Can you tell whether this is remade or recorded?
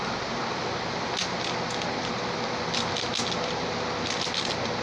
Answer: recorded